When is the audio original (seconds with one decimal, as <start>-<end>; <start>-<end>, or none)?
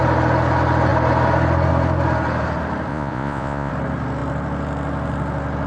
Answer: 0.0-2.9; 3.7-5.7